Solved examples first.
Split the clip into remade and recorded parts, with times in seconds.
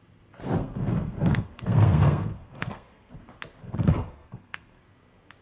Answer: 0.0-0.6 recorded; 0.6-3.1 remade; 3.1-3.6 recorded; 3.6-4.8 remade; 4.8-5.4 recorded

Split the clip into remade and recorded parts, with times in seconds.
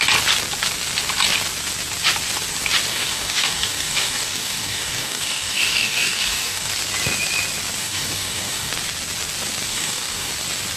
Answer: 0.0-2.9 recorded; 2.9-6.7 remade; 6.7-7.8 recorded; 7.8-8.7 remade; 8.7-9.7 recorded; 9.7-10.3 remade; 10.3-10.8 recorded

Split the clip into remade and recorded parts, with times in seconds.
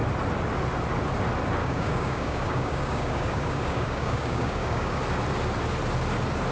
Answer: 0.0-1.6 recorded; 1.6-5.0 remade; 5.0-6.5 recorded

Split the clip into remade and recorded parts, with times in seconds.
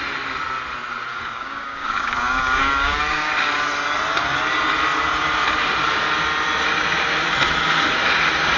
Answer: 0.0-1.1 recorded; 1.1-3.3 remade; 3.3-8.6 recorded